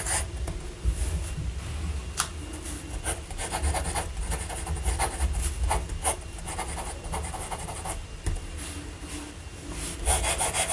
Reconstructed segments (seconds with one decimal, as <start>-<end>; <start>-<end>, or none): none